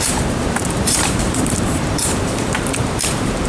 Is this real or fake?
fake